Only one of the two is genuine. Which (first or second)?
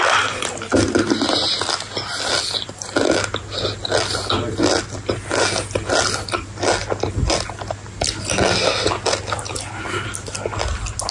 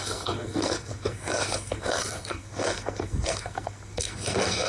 first